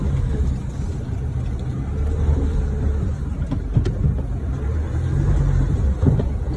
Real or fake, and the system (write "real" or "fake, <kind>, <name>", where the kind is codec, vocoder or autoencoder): real